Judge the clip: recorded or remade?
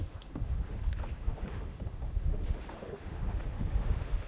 remade